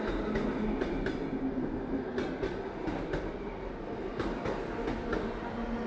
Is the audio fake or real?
real